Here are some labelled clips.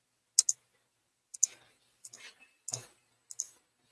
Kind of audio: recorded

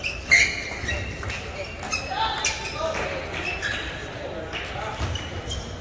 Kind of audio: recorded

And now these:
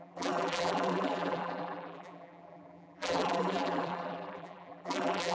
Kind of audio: remade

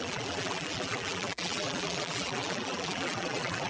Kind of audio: remade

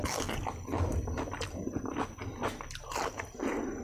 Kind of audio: recorded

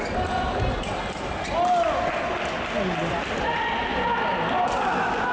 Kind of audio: recorded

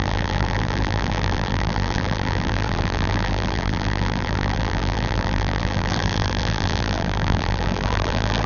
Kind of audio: remade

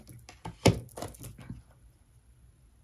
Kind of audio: recorded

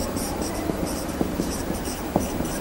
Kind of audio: remade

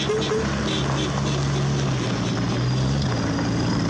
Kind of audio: recorded